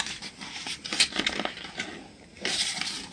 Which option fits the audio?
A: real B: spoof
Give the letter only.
A